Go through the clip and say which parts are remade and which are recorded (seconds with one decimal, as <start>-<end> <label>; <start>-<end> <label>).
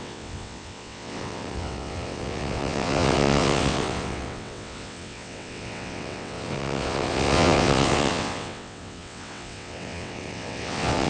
0.0-11.1 remade